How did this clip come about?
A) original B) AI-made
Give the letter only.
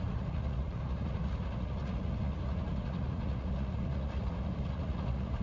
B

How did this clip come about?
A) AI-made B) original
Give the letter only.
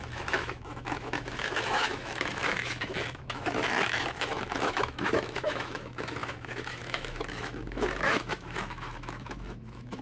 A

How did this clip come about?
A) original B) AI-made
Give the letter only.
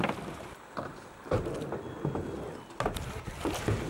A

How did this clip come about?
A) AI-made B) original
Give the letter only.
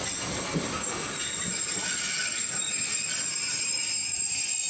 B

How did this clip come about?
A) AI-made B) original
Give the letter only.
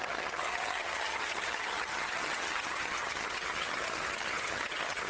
A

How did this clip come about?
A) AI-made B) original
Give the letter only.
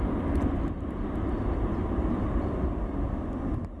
B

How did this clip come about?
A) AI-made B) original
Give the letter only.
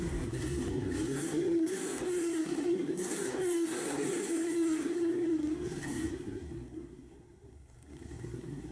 A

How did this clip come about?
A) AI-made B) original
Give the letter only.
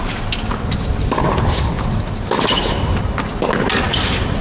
B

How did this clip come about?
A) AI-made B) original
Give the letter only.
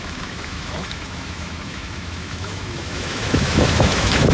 A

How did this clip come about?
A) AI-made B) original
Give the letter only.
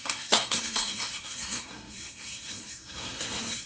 A